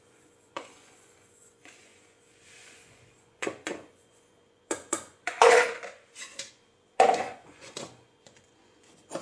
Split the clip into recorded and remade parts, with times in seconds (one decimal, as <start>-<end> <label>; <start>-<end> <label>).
0.0-9.2 remade